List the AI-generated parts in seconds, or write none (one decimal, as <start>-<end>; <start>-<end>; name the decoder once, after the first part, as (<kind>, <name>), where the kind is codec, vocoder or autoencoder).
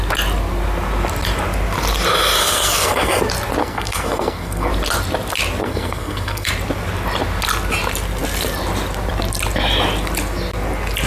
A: 2.4-3.2 (codec, SNAC); 3.6-4.7; 5.6-6.5